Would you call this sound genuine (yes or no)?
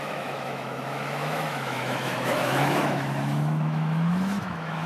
no